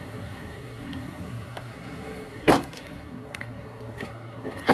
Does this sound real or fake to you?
fake